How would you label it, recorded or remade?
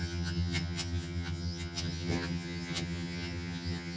remade